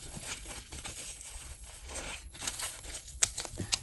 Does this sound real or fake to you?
fake